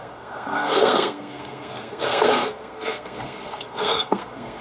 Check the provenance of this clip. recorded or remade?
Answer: remade